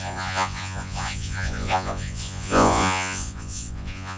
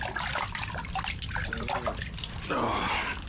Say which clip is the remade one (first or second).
first